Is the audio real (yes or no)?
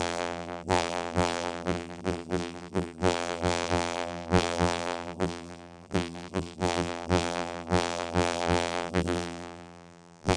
no